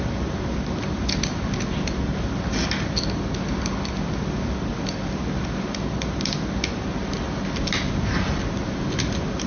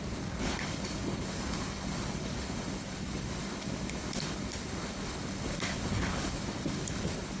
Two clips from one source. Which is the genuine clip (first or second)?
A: first